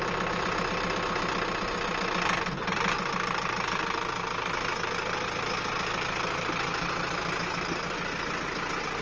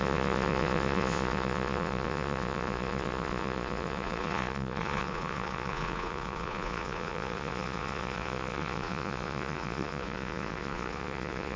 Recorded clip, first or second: first